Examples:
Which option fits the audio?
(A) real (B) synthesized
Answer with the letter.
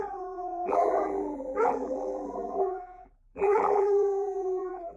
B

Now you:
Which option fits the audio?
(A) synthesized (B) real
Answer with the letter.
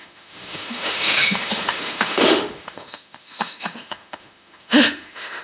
A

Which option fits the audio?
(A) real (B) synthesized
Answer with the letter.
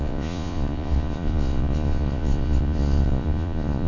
B